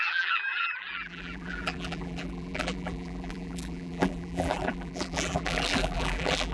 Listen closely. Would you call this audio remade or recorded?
remade